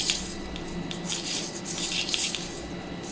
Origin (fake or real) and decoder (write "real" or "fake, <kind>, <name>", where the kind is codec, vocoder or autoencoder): real